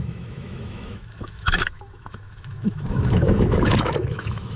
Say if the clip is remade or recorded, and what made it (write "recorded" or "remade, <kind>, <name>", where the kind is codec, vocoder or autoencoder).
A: remade, autoencoder, DAC-VAE